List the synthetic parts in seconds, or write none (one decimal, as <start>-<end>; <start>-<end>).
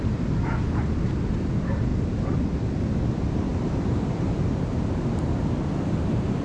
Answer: none